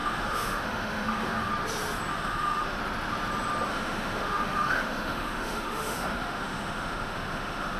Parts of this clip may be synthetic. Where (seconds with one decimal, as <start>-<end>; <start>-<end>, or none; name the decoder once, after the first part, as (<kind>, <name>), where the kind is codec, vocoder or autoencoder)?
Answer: 0.0-1.5 (autoencoder, DAC-VAE); 2.1-2.8; 3.7-7.8